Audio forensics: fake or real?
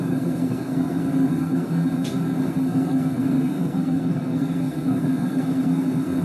fake